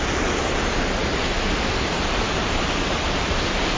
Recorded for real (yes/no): no